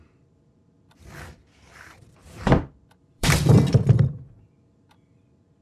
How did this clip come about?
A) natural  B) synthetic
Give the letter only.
B